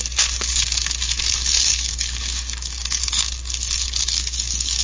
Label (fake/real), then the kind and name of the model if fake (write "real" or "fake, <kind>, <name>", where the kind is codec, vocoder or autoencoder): fake, codec, DAC